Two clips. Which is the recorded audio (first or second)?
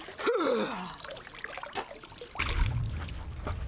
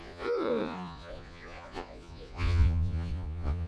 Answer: first